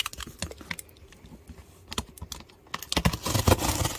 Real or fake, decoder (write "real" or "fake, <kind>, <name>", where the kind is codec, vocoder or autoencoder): real